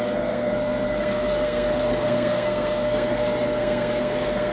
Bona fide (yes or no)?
no